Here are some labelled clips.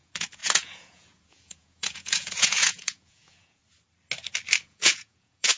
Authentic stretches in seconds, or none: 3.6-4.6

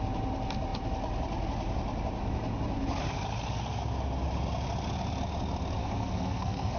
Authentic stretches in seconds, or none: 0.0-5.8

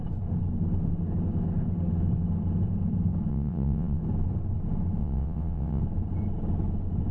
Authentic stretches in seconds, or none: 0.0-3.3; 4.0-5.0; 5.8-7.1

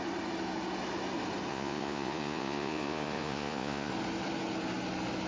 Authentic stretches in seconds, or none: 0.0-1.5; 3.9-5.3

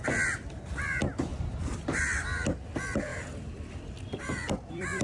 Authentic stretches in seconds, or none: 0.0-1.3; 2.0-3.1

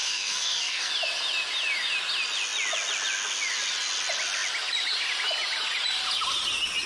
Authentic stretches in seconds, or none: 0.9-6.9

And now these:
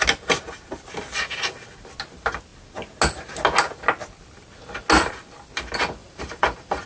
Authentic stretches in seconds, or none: 0.0-6.0

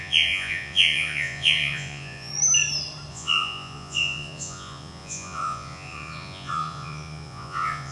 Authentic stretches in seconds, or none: 2.3-3.1